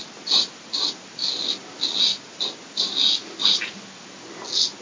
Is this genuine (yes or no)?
yes